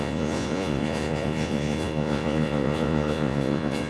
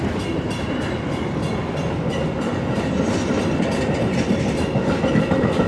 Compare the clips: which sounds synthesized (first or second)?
first